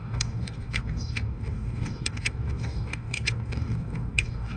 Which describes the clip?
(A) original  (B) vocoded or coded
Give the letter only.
B